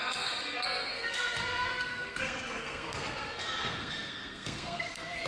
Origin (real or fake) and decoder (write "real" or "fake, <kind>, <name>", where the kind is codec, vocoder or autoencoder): fake, codec, SNAC